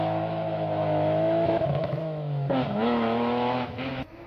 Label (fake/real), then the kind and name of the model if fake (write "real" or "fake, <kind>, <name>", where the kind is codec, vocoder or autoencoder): fake, autoencoder, DAC-VAE